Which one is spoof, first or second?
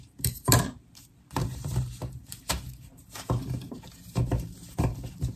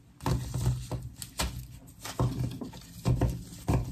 first